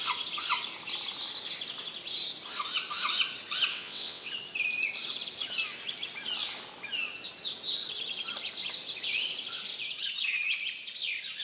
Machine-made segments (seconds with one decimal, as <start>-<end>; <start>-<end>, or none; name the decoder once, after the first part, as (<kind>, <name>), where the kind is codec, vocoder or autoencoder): 3.7-4.3 (vocoder, WaveNeXt)